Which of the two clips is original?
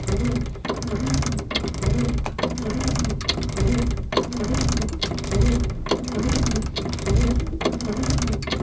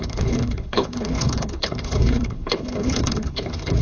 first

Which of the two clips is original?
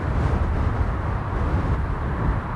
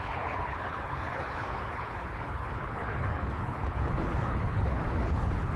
first